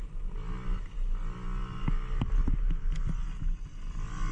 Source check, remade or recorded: recorded